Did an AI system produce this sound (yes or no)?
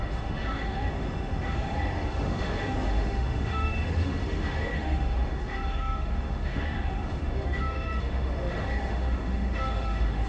yes